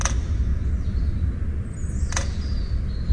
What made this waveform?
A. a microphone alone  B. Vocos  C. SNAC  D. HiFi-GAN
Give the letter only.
A